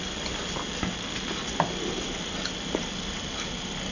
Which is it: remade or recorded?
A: recorded